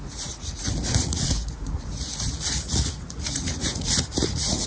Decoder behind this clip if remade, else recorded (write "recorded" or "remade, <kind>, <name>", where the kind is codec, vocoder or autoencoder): remade, vocoder, Vocos